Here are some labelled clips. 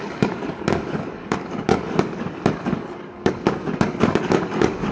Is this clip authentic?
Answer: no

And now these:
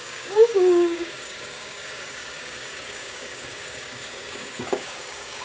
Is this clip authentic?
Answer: no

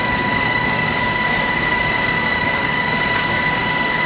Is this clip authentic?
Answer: no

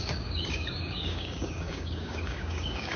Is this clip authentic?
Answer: no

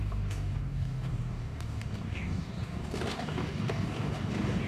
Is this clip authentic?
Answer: no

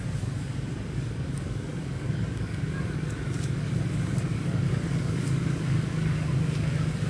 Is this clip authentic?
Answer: no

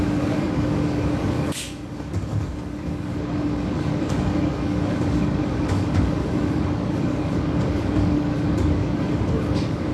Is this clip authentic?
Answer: no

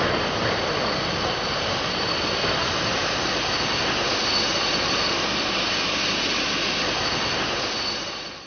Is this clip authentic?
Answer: yes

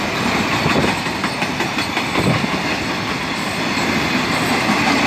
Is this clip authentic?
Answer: yes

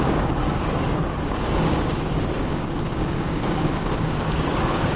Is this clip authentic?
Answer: no